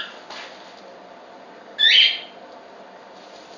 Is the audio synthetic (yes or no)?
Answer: no